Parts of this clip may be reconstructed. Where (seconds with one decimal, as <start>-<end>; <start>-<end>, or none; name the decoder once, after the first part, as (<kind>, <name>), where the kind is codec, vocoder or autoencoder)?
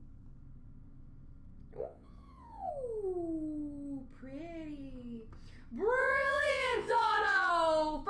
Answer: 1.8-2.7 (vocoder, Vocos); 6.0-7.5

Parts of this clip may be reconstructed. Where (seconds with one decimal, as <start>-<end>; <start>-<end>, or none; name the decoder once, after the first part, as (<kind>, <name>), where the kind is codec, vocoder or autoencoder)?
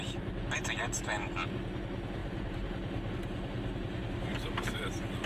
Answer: 2.2-5.3 (vocoder, BigVGAN v2)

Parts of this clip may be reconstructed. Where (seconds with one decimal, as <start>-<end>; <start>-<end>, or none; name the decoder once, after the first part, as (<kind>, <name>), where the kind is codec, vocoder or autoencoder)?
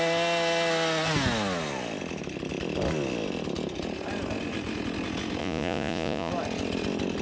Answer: 5.4-6.3 (vocoder, Vocos)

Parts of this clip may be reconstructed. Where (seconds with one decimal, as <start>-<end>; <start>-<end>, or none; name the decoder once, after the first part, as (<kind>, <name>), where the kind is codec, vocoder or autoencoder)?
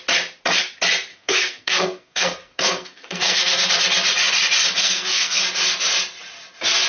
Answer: 1.1-3.7 (codec, SNAC); 4.8-5.4